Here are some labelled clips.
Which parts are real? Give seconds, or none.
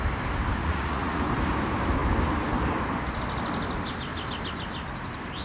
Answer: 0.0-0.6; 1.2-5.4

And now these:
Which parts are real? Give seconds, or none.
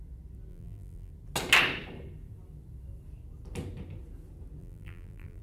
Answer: 0.0-0.5; 1.1-4.6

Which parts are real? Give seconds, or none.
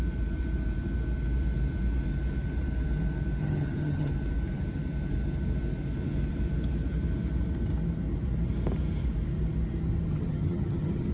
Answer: 0.0-3.4; 4.1-10.1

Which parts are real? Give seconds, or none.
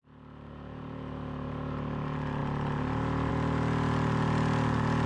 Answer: 0.0-5.1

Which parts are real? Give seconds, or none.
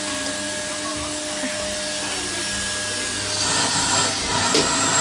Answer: 0.0-5.0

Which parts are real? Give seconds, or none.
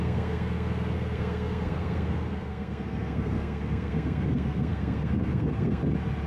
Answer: 5.8-6.3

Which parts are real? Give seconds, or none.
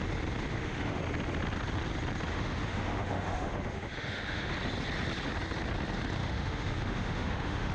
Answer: 0.0-0.5; 1.0-2.3; 4.5-6.2